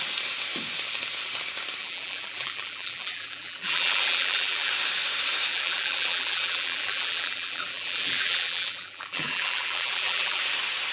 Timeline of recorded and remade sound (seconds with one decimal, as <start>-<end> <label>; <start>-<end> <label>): 0.0-1.8 recorded; 1.8-4.7 remade; 4.7-5.5 recorded; 5.5-10.4 remade; 10.4-10.9 recorded